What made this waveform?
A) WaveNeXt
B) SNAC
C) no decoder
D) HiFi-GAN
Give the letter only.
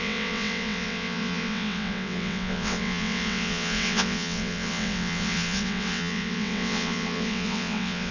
A